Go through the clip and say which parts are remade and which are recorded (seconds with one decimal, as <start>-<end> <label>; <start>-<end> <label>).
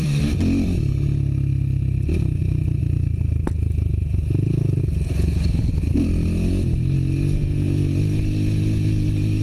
0.0-9.4 recorded